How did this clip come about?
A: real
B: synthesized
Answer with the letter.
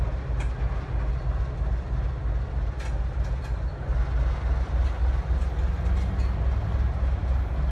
A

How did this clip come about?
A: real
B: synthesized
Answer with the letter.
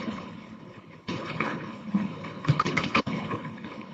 B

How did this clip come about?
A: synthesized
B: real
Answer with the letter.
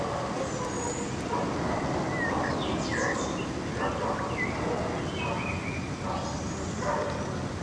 B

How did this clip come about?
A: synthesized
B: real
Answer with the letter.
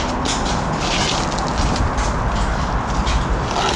B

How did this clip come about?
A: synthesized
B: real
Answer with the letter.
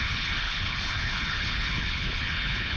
A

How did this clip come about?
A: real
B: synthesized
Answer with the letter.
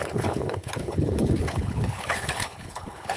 B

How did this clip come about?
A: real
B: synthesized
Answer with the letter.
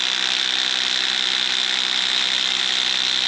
A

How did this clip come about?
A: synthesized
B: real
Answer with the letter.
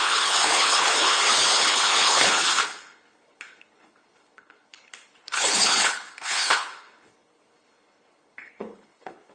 A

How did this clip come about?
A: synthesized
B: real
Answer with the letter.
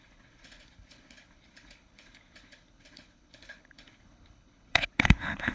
A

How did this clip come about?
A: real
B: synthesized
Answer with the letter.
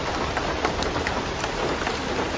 A